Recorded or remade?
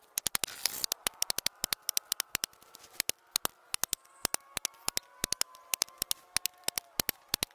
recorded